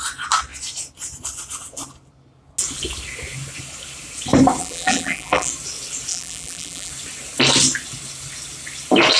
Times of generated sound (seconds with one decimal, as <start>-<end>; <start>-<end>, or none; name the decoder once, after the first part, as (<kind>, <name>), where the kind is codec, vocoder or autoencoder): 4.6-5.5 (vocoder, BigVGAN v2); 6.1-6.9